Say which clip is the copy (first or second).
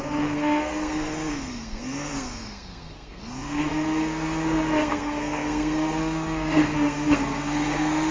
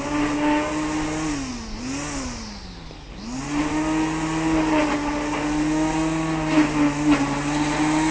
first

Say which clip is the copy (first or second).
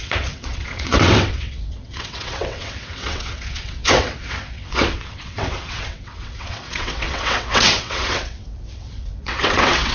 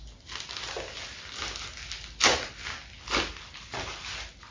first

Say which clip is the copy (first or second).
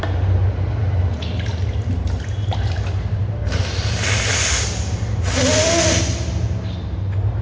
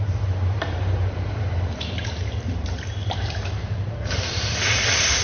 second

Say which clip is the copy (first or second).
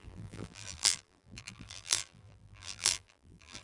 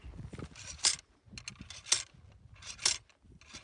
first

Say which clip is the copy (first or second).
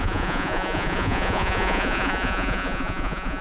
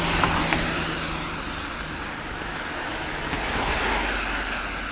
first